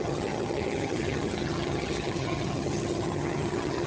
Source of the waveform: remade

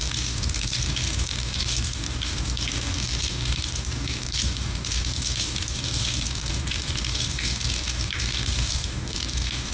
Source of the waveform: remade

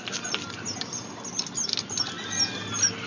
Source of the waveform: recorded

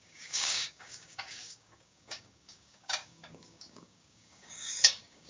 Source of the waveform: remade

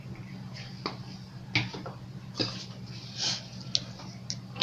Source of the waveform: recorded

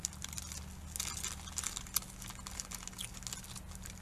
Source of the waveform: recorded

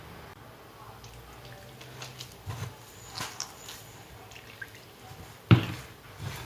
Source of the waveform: recorded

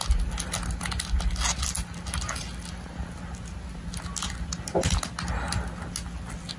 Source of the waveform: recorded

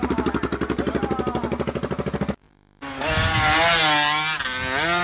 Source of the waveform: recorded